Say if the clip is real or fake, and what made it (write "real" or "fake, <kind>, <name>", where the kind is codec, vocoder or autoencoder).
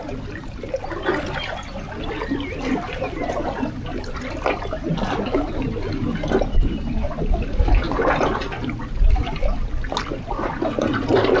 real